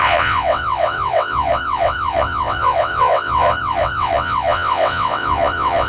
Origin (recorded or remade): remade